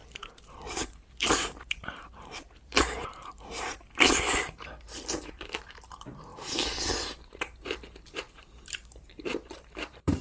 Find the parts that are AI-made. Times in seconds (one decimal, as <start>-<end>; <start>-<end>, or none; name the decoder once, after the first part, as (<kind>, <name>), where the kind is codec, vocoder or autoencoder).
0.0-10.2 (vocoder, BigVGAN v2)